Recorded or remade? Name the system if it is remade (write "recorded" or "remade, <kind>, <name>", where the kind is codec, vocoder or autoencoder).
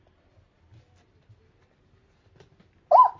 recorded